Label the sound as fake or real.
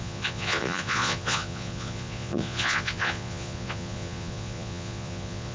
fake